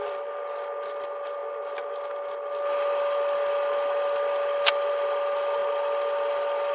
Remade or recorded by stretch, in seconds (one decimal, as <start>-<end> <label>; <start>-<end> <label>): 0.0-6.7 recorded